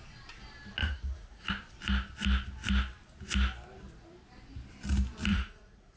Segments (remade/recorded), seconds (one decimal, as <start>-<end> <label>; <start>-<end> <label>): 0.0-0.8 recorded; 0.8-1.5 remade; 1.5-5.3 recorded; 5.3-6.0 remade